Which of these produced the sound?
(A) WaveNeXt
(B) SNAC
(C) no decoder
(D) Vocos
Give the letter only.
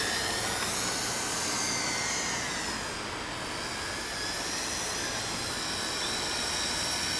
C